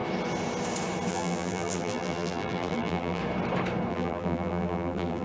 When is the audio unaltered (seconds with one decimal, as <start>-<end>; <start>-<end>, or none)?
0.0-1.1; 3.2-3.9